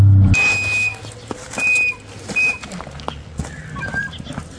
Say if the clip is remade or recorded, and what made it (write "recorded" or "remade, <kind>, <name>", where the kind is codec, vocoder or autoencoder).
recorded